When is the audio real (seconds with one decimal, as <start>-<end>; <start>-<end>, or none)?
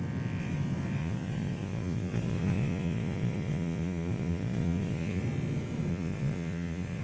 0.0-1.0; 5.2-5.9